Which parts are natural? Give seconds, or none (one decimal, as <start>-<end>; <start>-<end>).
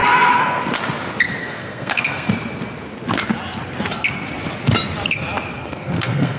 0.6-1.4; 2.3-5.6